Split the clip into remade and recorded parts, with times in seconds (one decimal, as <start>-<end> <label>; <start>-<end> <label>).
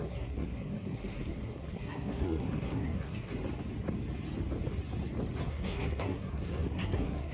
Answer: 0.0-3.3 remade; 3.3-5.5 recorded; 5.5-7.3 remade